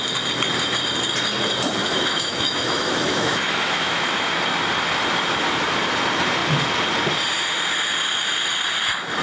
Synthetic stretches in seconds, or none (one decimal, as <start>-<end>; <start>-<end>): 1.8-4.3